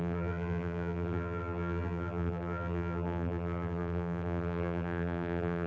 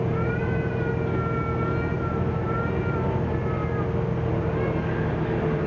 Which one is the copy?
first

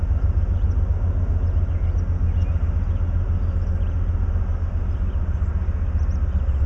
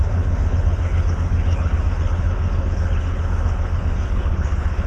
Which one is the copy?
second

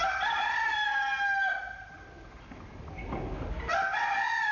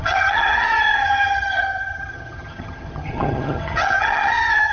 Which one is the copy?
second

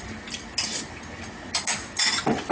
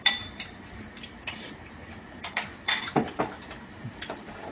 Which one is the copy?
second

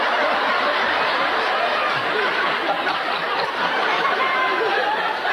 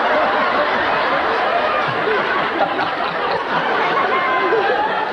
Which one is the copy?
first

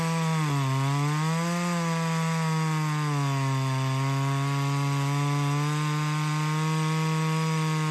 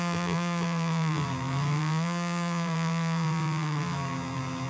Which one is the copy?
second